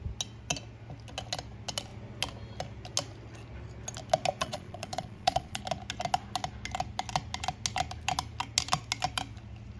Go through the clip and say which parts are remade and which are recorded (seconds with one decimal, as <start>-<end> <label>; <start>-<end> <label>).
0.0-4.4 recorded; 4.4-5.6 remade; 5.6-9.8 recorded